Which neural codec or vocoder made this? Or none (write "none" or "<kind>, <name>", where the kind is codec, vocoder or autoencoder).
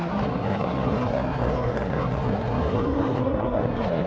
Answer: codec, SNAC